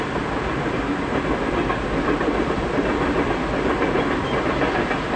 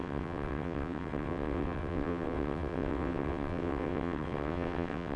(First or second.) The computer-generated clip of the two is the second